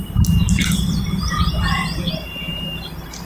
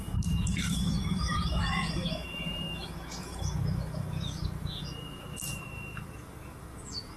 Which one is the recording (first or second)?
first